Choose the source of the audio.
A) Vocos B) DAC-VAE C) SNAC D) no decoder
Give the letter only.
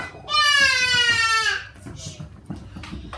D